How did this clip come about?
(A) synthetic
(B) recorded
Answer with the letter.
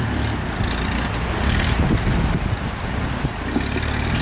B